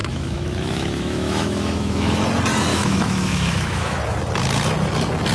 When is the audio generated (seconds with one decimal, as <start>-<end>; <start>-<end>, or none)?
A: 0.0-2.2; 2.7-4.0